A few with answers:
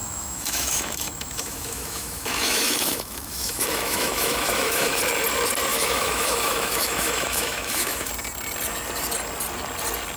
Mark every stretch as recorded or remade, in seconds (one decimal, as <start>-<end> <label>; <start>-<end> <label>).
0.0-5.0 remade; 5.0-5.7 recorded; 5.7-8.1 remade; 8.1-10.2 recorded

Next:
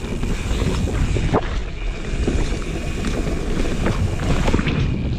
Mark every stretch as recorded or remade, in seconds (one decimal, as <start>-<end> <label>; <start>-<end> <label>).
0.0-5.2 recorded

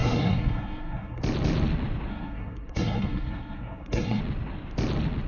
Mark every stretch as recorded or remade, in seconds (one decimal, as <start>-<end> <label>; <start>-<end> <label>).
0.0-1.2 remade; 1.2-2.1 recorded; 2.1-4.2 remade; 4.2-5.3 recorded